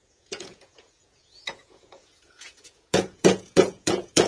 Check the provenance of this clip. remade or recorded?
remade